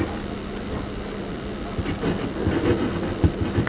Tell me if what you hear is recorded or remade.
recorded